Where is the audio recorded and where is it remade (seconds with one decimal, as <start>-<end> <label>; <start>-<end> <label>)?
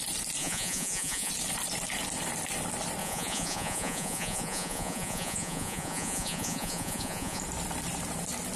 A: 0.0-0.4 recorded; 0.4-1.3 remade; 1.3-3.0 recorded; 3.0-7.4 remade; 7.4-8.6 recorded